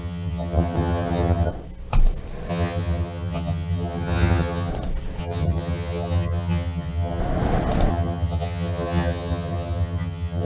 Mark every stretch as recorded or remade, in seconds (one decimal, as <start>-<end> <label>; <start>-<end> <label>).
0.0-1.5 remade; 1.5-2.5 recorded; 2.5-4.7 remade; 4.7-5.2 recorded; 5.2-7.2 remade; 7.2-7.9 recorded; 7.9-10.4 remade